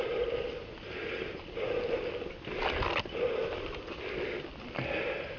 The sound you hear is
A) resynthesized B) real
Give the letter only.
B